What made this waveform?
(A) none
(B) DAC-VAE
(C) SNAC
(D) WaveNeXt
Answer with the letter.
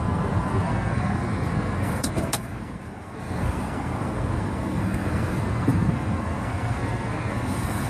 C